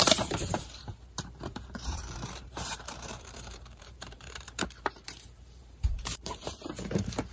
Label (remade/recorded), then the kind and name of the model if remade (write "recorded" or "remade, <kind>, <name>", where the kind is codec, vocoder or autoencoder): remade, vocoder, BigVGAN v2